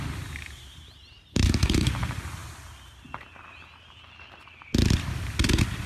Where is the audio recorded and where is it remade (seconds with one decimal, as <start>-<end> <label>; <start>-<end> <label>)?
0.0-1.3 recorded; 1.3-1.9 remade; 1.9-5.9 recorded